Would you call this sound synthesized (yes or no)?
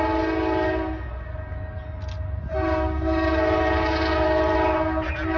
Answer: no